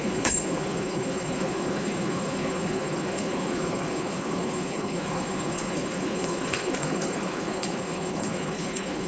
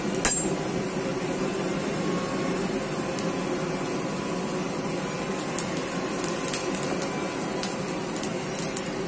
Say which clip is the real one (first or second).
second